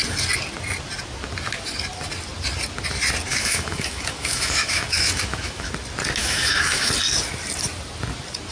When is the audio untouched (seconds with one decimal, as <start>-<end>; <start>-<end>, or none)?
0.0-3.3; 5.7-6.2; 6.9-8.5

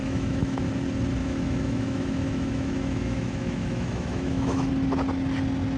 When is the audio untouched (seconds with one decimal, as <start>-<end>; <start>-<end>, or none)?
0.6-1.2; 4.7-5.8

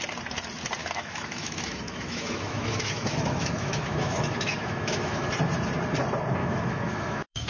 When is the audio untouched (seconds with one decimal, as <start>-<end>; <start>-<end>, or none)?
0.0-0.8; 5.3-6.4

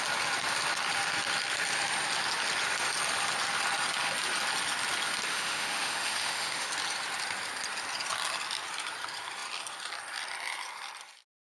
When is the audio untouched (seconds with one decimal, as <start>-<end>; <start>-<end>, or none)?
0.0-5.3; 6.7-11.4